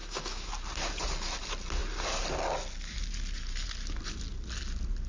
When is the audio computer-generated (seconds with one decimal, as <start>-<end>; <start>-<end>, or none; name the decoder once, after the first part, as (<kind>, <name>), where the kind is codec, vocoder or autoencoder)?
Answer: 0.0-0.5 (autoencoder, DAC-VAE)